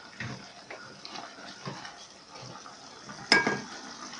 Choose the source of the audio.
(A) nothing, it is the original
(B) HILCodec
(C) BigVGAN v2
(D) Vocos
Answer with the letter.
A